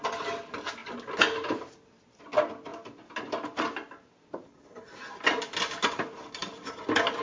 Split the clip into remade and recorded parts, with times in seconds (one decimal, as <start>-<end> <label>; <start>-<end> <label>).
0.0-7.2 recorded